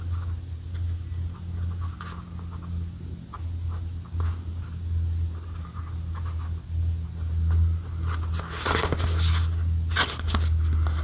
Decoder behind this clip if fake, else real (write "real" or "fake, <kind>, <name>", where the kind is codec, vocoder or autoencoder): real